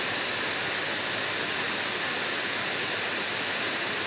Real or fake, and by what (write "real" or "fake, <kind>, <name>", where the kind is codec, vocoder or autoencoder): real